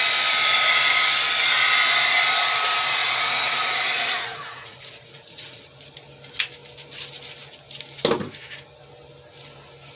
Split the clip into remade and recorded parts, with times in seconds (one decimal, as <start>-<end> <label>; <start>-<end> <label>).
0.0-3.0 recorded; 3.0-5.6 remade; 5.6-10.0 recorded